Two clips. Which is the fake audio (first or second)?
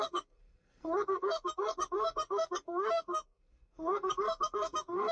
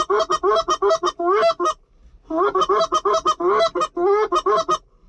first